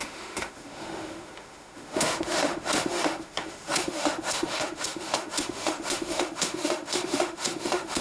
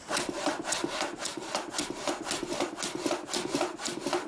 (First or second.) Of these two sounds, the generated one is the first